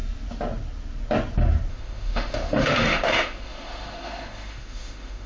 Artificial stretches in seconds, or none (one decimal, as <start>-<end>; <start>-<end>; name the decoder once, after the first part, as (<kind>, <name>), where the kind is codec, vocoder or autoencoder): 1.7-5.3 (autoencoder, DAC-VAE)